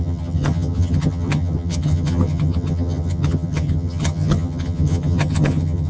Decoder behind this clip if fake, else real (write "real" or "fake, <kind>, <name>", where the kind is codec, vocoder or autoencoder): fake, vocoder, HiFi-GAN